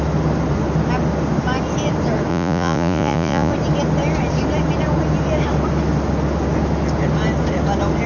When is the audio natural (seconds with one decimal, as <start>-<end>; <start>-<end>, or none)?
0.0-2.3; 3.5-8.1